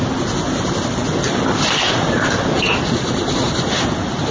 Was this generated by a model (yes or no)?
no